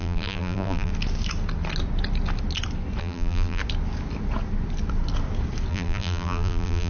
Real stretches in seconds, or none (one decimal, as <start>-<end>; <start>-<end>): 0.9-3.0; 3.6-5.7